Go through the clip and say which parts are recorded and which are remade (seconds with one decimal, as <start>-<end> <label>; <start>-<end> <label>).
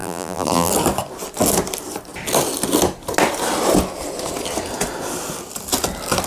0.0-0.7 remade; 0.7-6.3 recorded